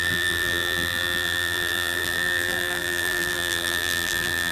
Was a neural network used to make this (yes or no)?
yes